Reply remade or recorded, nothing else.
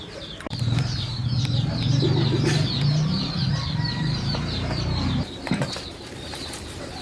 remade